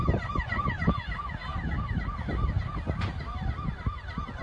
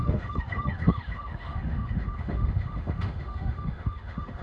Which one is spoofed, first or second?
second